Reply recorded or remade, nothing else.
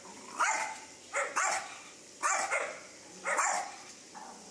recorded